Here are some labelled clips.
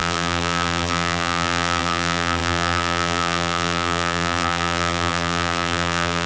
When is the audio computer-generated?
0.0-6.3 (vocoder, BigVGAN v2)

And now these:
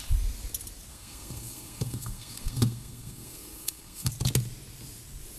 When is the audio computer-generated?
0.9-4.1 (codec, SNAC)

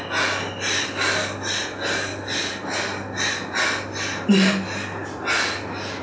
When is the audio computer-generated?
none

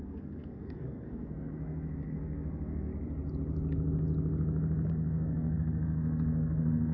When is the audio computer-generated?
0.0-2.9 (codec, SNAC); 4.9-6.9

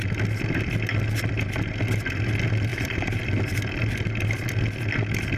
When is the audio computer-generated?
2.7-3.4 (vocoder, BigVGAN v2)

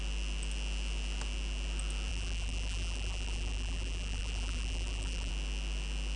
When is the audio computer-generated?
2.1-5.3 (vocoder, BigVGAN v2)